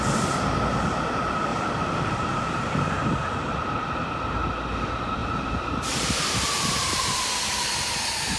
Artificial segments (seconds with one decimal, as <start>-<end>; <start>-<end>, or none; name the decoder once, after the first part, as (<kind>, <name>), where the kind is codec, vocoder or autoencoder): 1.5-2.9 (vocoder, BigVGAN v2); 5.2-7.1